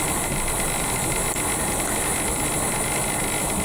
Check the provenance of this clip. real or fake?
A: real